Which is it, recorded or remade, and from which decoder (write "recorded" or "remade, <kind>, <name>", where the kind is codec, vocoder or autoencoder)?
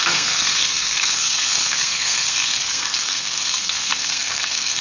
remade, codec, SNAC